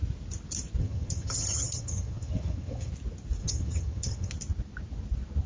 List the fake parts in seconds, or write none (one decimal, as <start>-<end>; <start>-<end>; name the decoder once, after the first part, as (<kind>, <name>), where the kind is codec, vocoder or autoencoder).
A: 0.8-2.9 (vocoder, HiFi-GAN); 3.4-4.3